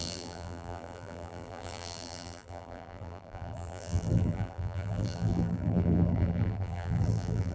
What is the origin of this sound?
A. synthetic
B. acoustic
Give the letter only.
A